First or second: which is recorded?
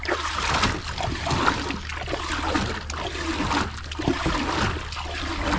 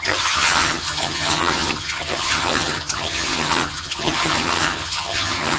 first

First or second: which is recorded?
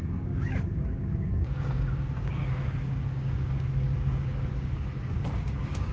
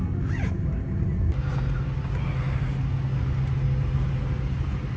second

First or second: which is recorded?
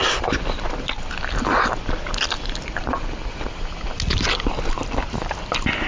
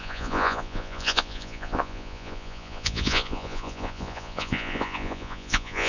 first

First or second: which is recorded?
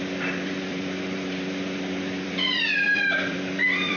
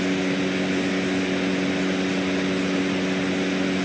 second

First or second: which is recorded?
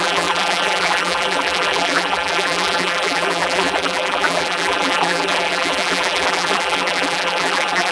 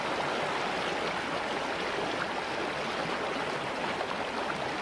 second